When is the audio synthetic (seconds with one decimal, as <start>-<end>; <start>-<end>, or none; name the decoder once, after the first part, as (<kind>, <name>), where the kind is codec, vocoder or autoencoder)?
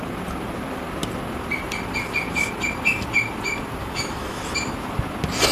3.8-4.4 (autoencoder, DAC-VAE)